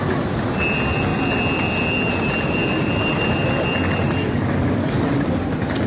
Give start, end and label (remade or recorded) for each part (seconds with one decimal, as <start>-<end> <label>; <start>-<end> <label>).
0.0-5.9 recorded